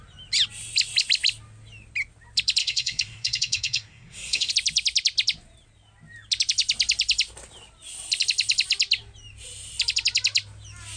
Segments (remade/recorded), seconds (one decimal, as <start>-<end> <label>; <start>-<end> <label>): 0.0-2.6 recorded; 2.6-4.5 remade; 4.5-11.0 recorded